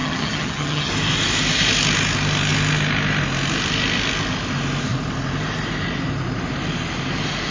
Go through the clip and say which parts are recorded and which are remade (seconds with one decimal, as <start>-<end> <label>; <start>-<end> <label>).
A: 0.0-0.9 remade; 0.9-7.5 recorded